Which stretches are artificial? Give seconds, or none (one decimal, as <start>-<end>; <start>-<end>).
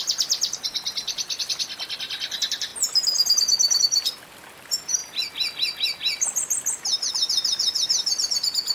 0.0-2.7; 3.8-5.0; 7.1-8.7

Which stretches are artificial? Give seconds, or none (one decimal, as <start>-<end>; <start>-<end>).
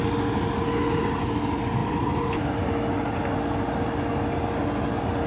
1.8-2.7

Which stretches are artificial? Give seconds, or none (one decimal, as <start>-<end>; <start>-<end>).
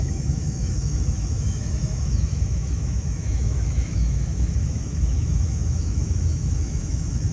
0.0-7.3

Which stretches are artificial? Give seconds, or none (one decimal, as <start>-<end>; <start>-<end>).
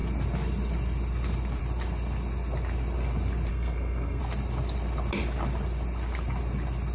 3.5-4.2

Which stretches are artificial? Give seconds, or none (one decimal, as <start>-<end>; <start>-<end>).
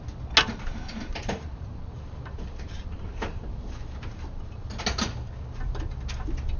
1.1-4.7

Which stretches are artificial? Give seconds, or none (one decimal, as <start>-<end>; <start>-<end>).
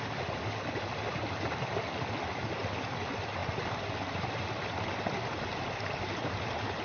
none